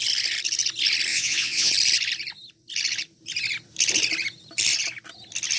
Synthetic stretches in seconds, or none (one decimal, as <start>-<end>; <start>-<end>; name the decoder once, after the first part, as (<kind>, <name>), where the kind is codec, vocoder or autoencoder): 1.1-1.7 (vocoder, WaveNeXt)